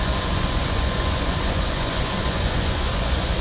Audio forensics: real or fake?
fake